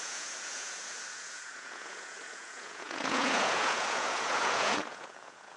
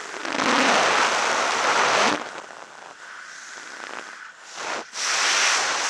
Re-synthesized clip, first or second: first